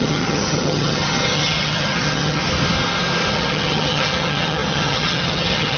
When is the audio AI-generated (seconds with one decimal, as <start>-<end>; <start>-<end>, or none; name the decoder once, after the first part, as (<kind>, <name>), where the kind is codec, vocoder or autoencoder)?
0.0-2.4 (vocoder, HiFi-GAN); 3.3-5.8